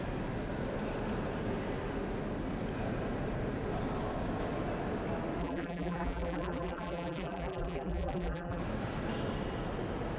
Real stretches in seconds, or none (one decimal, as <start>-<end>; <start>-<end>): 0.0-5.4; 8.6-10.2